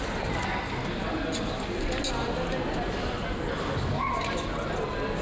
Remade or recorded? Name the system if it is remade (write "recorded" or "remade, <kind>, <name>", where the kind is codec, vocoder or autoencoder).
recorded